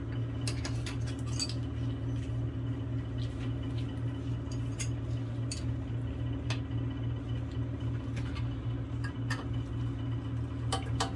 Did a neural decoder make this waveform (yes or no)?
no